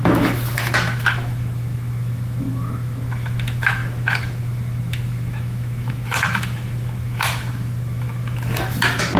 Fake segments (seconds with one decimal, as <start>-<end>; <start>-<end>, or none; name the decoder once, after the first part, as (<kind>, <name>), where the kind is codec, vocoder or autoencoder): 0.0-9.2 (autoencoder, DAC-VAE)